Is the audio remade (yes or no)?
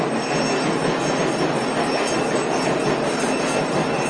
no